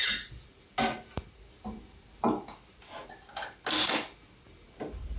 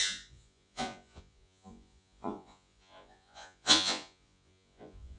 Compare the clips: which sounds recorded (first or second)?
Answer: first